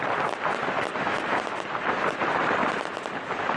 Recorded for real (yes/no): yes